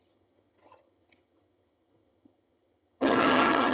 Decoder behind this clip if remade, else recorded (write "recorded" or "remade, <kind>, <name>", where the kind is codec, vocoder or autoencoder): remade, vocoder, HiFi-GAN